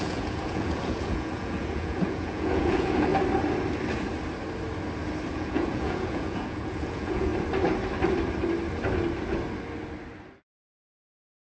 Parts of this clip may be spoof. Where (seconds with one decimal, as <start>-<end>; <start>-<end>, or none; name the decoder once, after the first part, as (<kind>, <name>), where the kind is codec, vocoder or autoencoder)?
0.0-3.1 (vocoder, Vocos); 5.3-7.3; 10.7-11.4